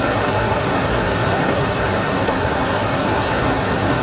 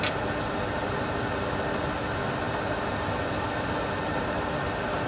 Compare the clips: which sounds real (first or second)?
second